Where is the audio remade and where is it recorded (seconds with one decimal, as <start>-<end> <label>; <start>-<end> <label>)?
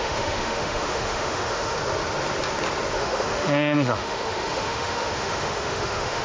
0.0-1.8 remade; 1.8-3.0 recorded; 3.0-6.2 remade